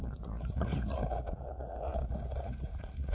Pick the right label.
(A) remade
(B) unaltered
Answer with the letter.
A